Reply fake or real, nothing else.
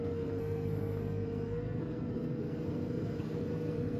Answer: fake